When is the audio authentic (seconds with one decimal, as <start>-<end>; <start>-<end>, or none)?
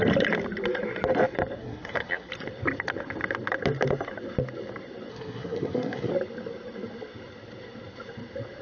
0.0-1.6; 2.3-5.1; 6.1-8.6